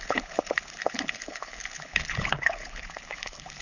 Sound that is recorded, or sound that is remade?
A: remade